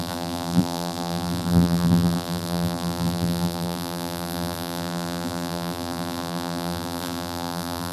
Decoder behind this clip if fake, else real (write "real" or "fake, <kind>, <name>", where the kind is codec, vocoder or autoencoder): fake, vocoder, BigVGAN v2